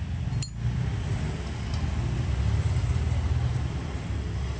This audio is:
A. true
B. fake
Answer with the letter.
A